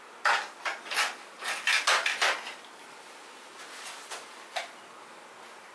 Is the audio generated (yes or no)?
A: no